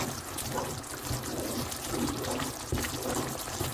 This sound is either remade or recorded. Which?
remade